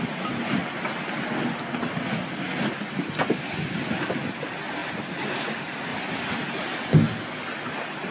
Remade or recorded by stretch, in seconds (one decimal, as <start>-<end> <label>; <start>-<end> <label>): 0.0-4.8 recorded; 4.8-5.4 remade; 5.4-5.9 recorded; 5.9-6.4 remade; 6.4-8.1 recorded